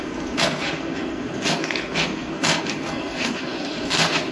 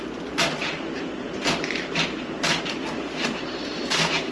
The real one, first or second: second